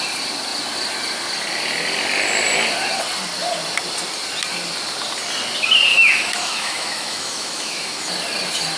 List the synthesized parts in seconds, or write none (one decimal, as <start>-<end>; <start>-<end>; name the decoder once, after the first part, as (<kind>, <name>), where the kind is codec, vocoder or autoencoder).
5.9-8.1 (autoencoder, DAC-VAE)